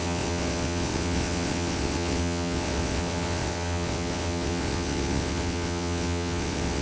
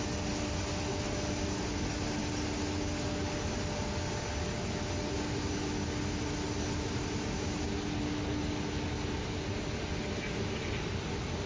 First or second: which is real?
second